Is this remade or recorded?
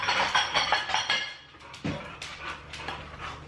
remade